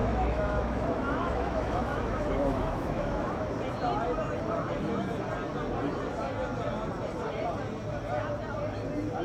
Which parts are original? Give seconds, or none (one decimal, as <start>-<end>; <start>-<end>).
3.4-9.2